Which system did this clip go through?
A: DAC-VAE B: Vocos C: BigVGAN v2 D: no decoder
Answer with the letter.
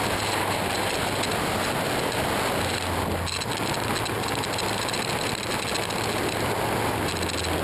D